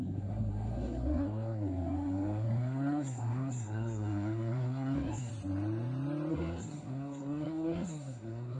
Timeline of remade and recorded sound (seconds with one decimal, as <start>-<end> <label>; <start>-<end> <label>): 0.0-5.3 remade; 5.3-6.3 recorded; 6.3-8.6 remade